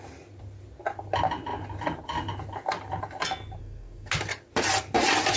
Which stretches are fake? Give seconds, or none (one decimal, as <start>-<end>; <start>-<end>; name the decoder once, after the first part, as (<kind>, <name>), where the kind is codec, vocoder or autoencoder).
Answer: 3.6-4.1 (codec, SNAC)